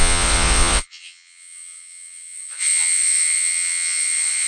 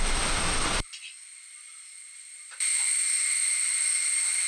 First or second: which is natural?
second